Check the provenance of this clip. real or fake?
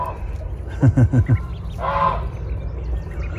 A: real